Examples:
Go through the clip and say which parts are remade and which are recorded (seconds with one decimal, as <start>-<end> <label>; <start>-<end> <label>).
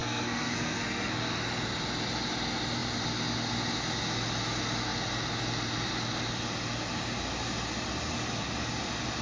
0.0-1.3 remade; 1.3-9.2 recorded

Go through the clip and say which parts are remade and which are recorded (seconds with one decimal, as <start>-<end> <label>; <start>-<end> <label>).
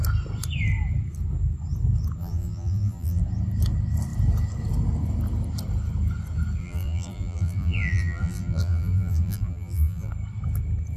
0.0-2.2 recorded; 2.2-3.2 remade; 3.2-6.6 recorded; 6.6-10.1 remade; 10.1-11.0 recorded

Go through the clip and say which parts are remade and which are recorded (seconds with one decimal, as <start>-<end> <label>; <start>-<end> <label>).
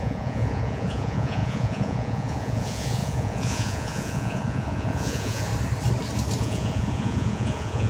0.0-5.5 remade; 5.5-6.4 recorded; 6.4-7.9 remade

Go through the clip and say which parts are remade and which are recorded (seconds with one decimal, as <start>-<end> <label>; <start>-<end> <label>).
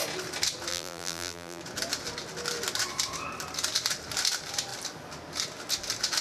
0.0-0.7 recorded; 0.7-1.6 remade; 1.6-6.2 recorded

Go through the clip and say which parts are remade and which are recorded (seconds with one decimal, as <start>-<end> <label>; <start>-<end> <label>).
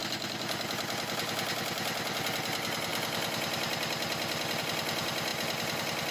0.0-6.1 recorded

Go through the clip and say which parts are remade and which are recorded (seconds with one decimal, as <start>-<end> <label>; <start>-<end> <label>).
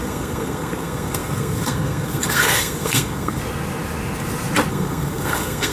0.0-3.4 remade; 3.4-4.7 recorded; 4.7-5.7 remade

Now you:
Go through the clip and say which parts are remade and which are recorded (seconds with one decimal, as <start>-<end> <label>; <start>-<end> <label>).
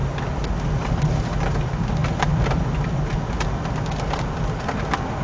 0.0-5.2 recorded